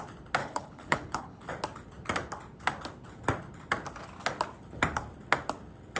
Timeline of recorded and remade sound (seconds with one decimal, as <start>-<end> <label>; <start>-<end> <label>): 0.0-0.4 recorded; 0.4-1.5 remade; 1.5-6.0 recorded